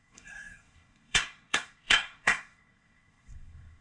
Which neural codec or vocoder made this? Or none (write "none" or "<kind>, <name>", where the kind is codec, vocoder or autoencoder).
codec, SNAC